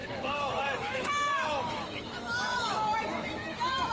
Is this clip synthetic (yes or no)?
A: yes